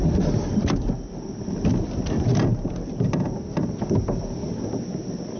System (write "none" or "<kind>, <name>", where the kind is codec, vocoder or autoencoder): none